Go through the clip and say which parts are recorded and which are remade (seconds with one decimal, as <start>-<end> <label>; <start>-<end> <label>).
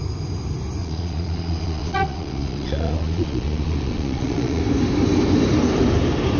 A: 0.0-0.8 recorded; 0.8-4.6 remade; 4.6-6.4 recorded